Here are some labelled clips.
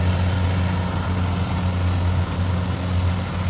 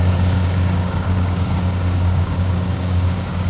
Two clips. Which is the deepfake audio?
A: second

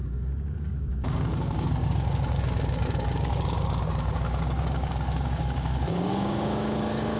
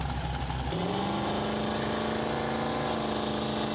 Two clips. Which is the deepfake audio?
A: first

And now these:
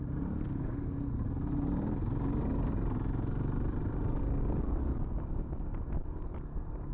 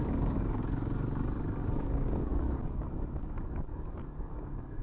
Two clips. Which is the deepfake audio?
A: second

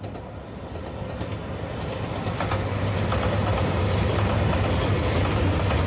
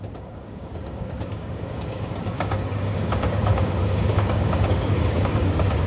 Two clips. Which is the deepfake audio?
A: second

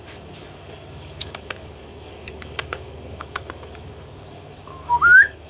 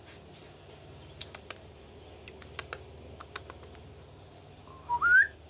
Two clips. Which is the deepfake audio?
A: first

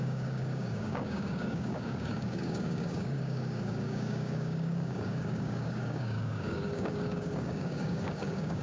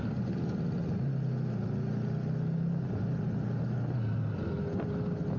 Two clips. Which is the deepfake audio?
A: first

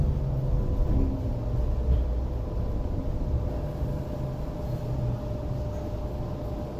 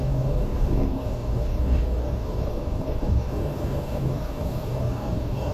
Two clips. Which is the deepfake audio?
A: second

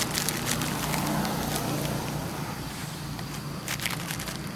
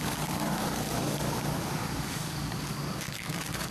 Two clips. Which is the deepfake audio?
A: second